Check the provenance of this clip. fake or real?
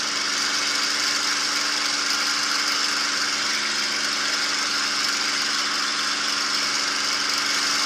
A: real